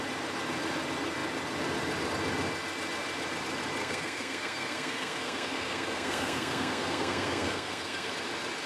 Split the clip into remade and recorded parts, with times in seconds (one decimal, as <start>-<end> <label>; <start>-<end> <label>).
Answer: 0.0-3.8 recorded; 3.8-8.1 remade; 8.1-8.7 recorded